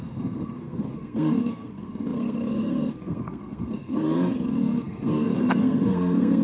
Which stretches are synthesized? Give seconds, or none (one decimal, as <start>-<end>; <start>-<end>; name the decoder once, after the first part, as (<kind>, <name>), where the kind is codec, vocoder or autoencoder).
0.0-6.4 (codec, SNAC)

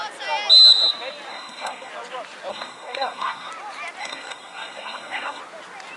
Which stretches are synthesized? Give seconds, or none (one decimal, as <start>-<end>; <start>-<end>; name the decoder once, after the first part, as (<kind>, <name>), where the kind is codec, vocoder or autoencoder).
1.3-1.9 (codec, SNAC); 2.5-3.5; 4.0-5.4

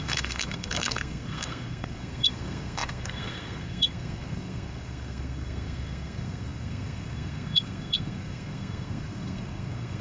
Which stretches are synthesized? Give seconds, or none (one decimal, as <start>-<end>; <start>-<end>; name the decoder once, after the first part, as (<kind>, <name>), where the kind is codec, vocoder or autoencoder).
0.0-10.0 (codec, SNAC)

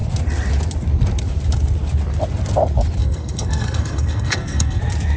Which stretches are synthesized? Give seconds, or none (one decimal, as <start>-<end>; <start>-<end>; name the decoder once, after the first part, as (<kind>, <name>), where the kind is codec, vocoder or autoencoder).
3.0-4.8 (codec, SNAC)

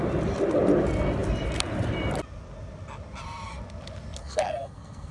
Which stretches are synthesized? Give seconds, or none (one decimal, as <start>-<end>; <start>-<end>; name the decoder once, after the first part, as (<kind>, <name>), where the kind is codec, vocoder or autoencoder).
4.2-5.1 (codec, SNAC)

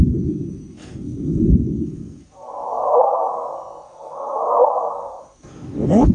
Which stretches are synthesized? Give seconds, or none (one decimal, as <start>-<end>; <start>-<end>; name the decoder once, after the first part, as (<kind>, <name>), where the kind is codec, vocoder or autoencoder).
0.0-6.1 (codec, SNAC)

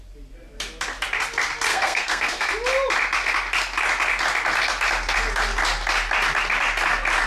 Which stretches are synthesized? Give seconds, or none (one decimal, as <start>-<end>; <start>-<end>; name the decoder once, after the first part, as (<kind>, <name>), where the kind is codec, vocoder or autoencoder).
1.7-2.5 (codec, SNAC)

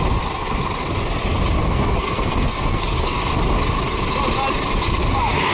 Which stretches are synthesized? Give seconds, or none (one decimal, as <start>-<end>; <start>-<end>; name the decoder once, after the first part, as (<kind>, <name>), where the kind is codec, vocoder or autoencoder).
1.6-3.2 (codec, SNAC)